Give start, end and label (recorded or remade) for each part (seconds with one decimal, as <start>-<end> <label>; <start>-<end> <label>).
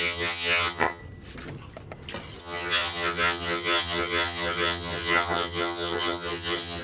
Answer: 0.0-1.0 remade; 1.0-2.4 recorded; 2.4-6.8 remade